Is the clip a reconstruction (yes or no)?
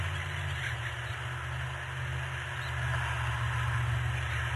no